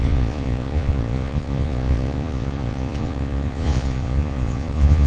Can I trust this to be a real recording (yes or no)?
no